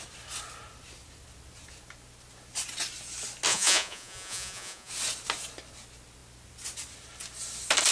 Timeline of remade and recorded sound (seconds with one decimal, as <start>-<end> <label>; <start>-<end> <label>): 0.0-3.5 recorded; 3.5-4.9 remade; 4.9-7.9 recorded